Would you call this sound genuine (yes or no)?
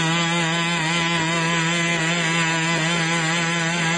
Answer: yes